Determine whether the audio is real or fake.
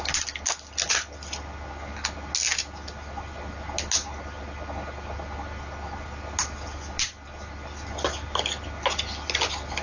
real